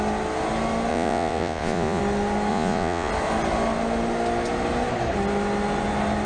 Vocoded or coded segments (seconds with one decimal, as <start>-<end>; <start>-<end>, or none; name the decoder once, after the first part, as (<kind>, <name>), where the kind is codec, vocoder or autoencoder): 0.9-2.0 (vocoder, Vocos); 2.5-3.1